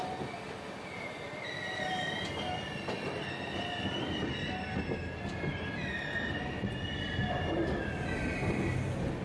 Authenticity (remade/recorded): recorded